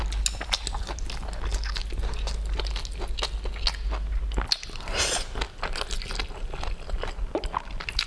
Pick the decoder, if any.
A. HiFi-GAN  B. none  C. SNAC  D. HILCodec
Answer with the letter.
B